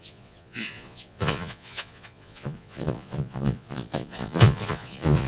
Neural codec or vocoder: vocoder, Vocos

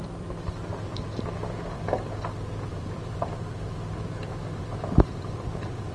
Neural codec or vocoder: vocoder, BigVGAN v2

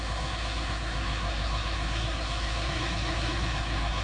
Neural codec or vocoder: codec, SNAC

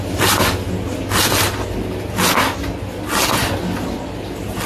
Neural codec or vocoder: none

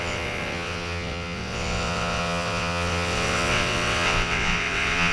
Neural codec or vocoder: vocoder, WaveNeXt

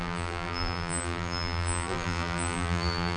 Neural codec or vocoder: vocoder, BigVGAN v2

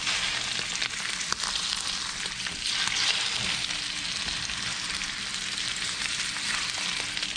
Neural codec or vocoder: none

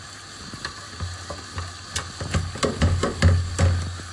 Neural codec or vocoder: none